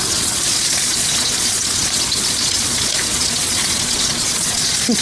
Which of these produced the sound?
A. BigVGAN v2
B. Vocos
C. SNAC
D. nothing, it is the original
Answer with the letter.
B